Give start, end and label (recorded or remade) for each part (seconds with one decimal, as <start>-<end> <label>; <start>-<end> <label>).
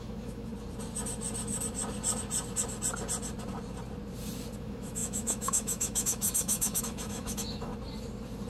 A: 0.0-0.5 remade; 0.5-4.6 recorded; 4.6-7.7 remade; 7.7-8.5 recorded